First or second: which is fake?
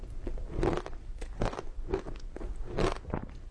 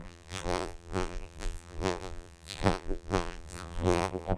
second